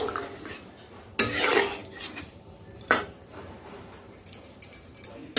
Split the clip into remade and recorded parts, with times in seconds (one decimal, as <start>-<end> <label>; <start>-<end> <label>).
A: 0.0-1.8 recorded; 1.8-4.9 remade; 4.9-5.4 recorded